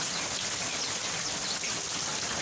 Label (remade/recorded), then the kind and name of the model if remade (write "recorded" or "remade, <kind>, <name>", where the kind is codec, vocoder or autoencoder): recorded